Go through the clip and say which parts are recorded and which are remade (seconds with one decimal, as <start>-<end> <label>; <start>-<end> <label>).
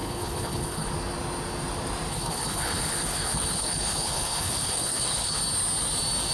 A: 0.0-0.9 remade; 0.9-2.1 recorded; 2.1-5.4 remade; 5.4-6.3 recorded